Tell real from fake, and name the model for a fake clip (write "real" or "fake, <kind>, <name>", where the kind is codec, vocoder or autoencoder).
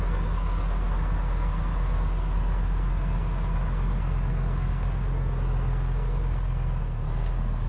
fake, codec, SNAC